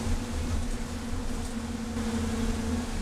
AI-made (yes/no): no